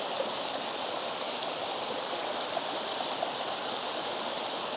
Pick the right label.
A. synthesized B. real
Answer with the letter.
B